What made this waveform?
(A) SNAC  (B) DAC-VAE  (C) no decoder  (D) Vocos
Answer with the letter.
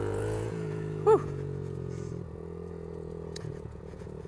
D